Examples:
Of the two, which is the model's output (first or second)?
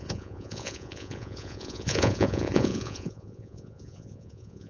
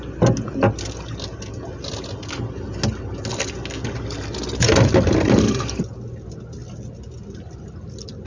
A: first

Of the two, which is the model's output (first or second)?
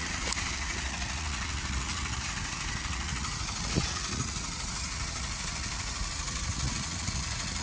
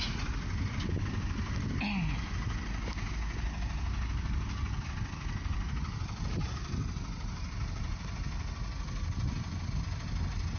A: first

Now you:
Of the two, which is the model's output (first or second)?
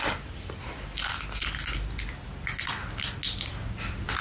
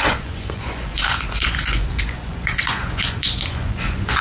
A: second